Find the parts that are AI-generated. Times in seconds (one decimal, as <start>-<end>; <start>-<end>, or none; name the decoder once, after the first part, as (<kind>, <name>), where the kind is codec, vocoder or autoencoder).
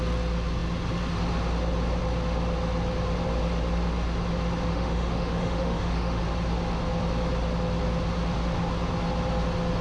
4.7-6.2 (autoencoder, DAC-VAE)